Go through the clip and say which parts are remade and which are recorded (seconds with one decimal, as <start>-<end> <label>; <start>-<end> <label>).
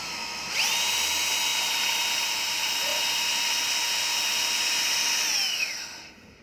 0.0-5.5 recorded; 5.5-6.4 remade